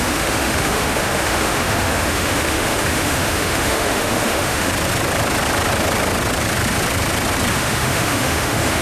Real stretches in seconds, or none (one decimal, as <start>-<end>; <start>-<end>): 4.7-7.5